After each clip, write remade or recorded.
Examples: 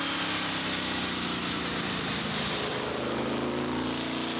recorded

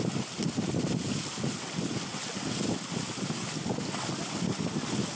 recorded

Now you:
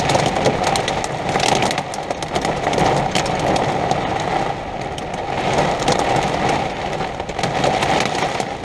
recorded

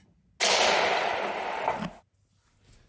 recorded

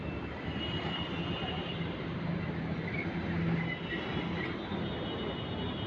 recorded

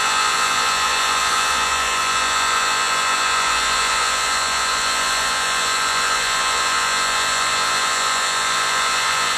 remade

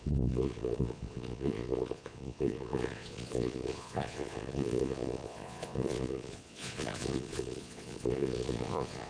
remade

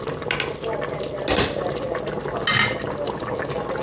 recorded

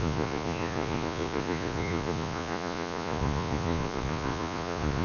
remade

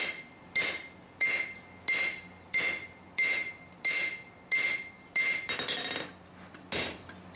recorded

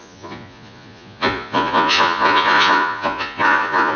remade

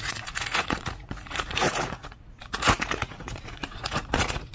remade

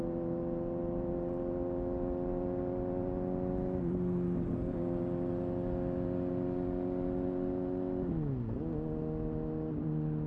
recorded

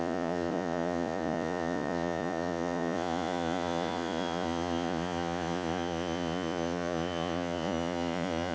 remade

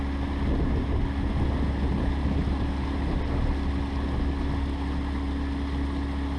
recorded